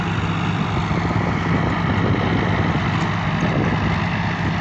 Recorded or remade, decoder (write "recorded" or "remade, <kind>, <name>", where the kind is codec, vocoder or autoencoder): recorded